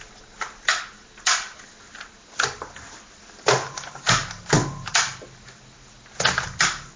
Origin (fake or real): real